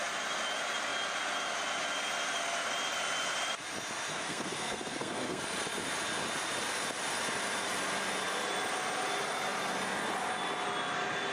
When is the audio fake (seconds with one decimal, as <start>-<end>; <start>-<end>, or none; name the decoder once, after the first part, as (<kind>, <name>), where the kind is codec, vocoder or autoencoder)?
4.1-5.4 (codec, SNAC)